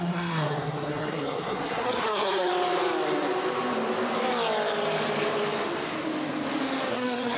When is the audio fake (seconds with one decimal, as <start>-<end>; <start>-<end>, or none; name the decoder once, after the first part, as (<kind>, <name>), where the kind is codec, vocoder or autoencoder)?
0.0-2.5 (codec, SNAC); 6.9-7.4